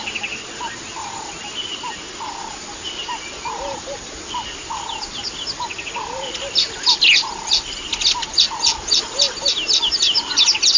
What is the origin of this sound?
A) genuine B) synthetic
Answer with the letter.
A